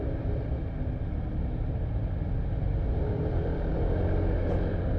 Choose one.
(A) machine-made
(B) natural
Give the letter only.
B